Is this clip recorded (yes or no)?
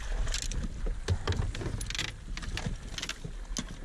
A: yes